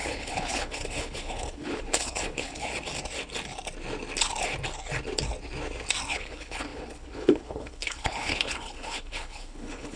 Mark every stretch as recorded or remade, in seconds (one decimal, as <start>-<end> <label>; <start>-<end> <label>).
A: 0.0-2.7 remade; 2.7-6.1 recorded; 6.1-10.0 remade